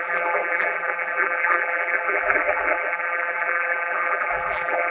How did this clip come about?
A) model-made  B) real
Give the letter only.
A